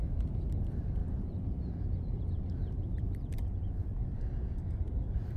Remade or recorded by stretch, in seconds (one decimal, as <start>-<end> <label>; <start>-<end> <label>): 0.0-5.4 recorded